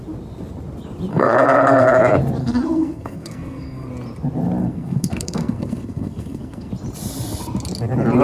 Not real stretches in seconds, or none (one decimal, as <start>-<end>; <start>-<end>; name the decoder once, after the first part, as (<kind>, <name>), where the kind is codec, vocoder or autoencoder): 1.1-1.9 (codec, SNAC); 2.4-3.9; 4.6-6.7